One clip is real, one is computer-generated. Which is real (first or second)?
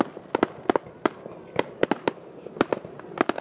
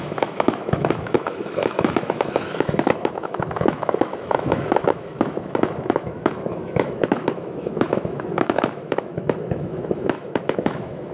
first